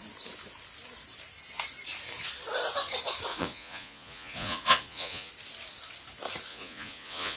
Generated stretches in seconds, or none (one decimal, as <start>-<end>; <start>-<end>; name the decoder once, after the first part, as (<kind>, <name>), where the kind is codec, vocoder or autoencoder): 3.3-5.3 (vocoder, Vocos); 6.5-7.4

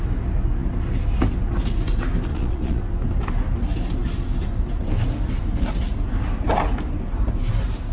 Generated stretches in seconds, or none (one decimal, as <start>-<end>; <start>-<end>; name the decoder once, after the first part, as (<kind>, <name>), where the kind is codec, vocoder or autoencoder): 2.3-2.8 (vocoder, Vocos)

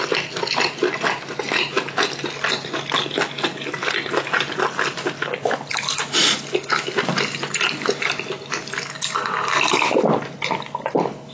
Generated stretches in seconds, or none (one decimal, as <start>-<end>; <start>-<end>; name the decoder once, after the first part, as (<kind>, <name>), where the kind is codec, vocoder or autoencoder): none

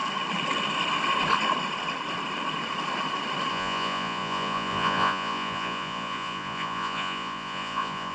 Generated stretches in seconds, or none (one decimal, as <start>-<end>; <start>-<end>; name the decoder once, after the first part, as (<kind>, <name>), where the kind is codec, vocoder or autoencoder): 3.5-8.1 (vocoder, Vocos)

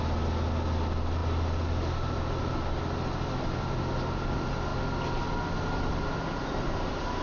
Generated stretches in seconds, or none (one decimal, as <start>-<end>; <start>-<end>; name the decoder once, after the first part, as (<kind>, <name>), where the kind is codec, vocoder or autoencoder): none